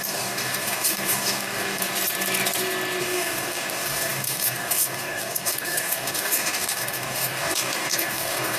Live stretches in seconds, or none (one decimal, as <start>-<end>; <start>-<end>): 1.8-3.0